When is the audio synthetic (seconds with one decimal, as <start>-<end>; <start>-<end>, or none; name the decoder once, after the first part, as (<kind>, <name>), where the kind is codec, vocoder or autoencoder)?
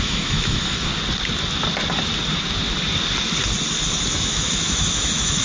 0.0-0.9 (autoencoder, DAC-VAE); 4.1-5.4